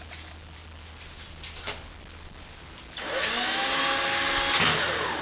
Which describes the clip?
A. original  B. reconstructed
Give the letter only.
A